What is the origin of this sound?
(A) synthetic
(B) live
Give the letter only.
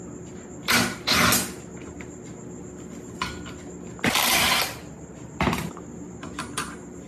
B